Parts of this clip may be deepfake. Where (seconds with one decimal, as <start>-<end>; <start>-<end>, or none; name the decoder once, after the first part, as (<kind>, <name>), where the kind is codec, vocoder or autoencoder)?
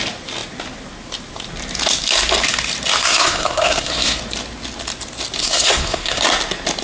3.0-4.2 (codec, SNAC); 5.4-6.2